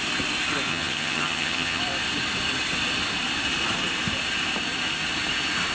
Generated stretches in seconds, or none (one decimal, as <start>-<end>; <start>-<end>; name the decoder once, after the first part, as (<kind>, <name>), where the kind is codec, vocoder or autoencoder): 0.7-1.8 (vocoder, HiFi-GAN)